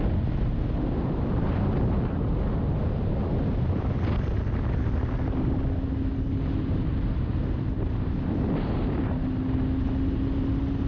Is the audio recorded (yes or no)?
yes